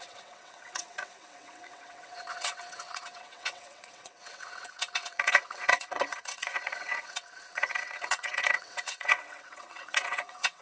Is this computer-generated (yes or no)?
yes